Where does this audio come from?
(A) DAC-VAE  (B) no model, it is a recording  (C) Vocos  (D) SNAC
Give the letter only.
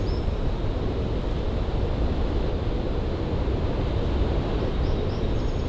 B